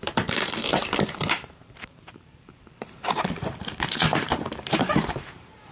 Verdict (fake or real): fake